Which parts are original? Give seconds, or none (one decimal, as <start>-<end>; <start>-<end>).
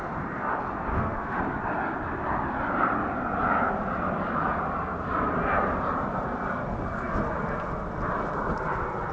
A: 0.0-0.9; 1.4-9.1